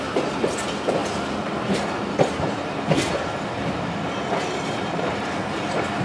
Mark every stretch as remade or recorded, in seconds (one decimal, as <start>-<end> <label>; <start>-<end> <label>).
0.0-6.0 recorded